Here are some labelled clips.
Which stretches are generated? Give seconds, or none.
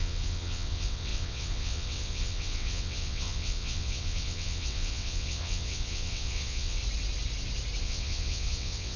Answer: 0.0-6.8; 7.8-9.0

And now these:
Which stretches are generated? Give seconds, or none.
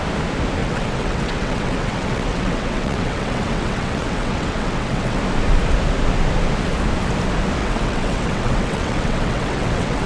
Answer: 0.6-5.2; 7.6-10.1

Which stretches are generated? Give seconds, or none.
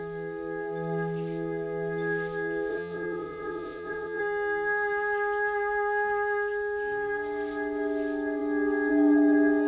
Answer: 2.7-4.2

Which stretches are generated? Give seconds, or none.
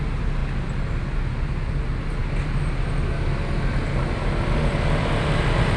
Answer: none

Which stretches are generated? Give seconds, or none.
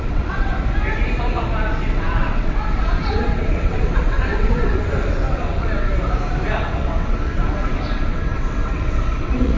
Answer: 0.0-0.5; 1.7-5.9; 6.6-9.6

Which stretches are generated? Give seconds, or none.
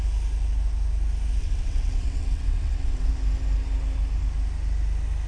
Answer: 1.4-3.1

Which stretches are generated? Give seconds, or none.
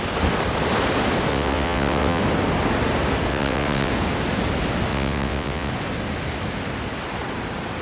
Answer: 1.3-2.2; 3.3-3.9; 4.9-5.7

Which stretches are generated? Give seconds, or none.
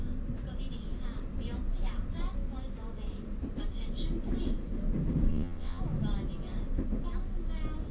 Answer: 5.3-5.8